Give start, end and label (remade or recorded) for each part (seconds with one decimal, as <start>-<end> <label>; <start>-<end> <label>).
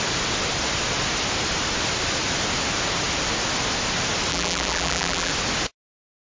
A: 0.0-4.3 recorded; 4.3-5.3 remade; 5.3-6.3 recorded